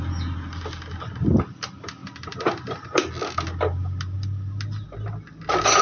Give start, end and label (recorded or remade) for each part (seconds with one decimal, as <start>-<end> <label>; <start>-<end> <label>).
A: 0.0-5.8 recorded